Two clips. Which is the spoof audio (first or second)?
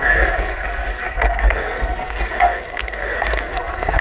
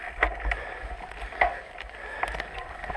first